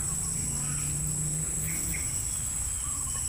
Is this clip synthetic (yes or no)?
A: no